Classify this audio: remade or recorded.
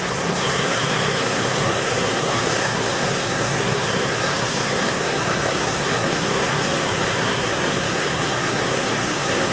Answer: remade